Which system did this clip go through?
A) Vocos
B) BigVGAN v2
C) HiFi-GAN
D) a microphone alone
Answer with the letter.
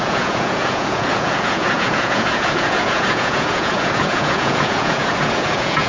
A